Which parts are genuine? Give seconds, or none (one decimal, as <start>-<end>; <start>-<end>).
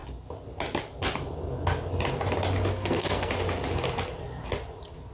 0.0-2.7; 3.3-5.1